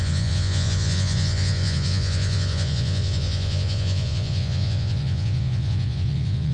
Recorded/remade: remade